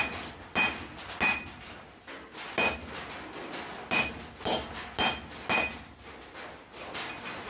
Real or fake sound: real